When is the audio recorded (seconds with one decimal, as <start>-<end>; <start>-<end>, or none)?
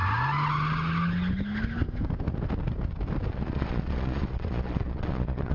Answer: 0.0-3.3